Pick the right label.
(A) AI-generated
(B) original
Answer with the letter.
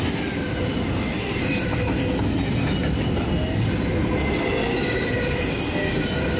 B